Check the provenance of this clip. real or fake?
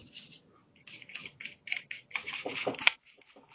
real